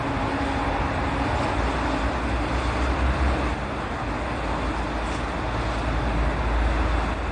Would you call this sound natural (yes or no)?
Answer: yes